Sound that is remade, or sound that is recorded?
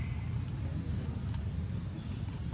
recorded